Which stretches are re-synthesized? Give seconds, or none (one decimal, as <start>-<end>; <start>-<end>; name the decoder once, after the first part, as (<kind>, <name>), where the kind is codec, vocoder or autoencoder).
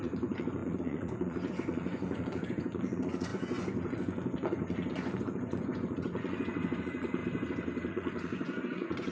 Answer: 0.0-7.2 (vocoder, Vocos); 7.9-9.1